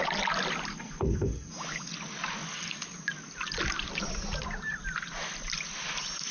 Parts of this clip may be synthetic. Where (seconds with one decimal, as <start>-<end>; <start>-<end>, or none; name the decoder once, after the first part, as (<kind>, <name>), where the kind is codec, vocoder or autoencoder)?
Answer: 0.7-1.5 (codec, SNAC)